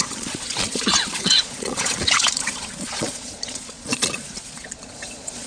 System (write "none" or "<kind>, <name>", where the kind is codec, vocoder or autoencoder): vocoder, Vocos